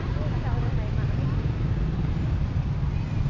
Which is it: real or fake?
real